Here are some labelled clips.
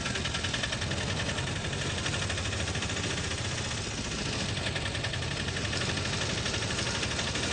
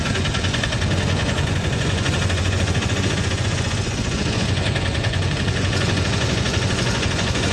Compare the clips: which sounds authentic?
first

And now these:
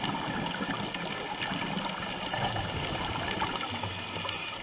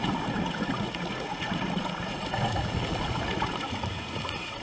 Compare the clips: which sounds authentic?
first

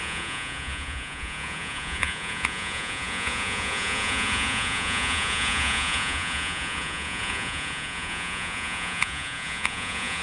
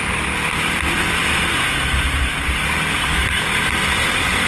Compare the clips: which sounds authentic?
second